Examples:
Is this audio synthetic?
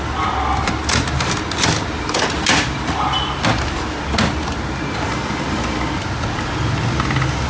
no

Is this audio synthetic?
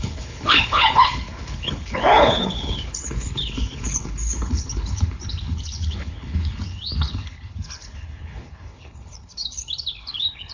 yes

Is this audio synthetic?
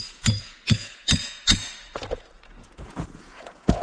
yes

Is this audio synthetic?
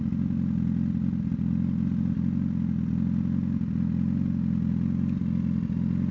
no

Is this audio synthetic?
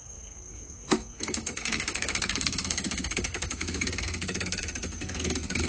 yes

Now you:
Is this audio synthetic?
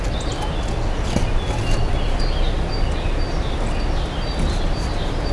no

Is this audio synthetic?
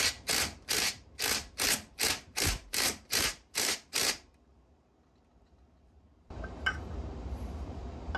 yes